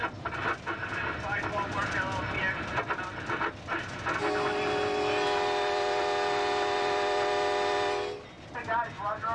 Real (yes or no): yes